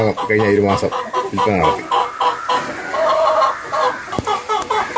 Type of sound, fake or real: real